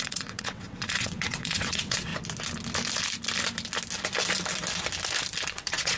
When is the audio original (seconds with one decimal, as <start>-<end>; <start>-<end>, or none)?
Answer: 2.1-5.5